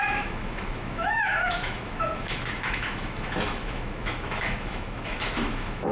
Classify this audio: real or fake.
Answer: fake